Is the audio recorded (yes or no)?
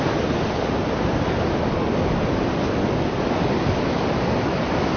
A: yes